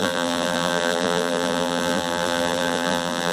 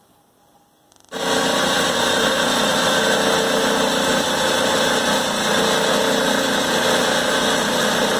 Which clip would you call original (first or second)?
second